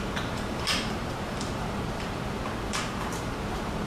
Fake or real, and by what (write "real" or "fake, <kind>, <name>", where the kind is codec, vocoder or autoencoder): fake, vocoder, BigVGAN v2